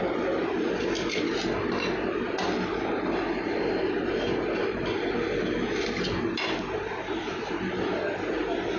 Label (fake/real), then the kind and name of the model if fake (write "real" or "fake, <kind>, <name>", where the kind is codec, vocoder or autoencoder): real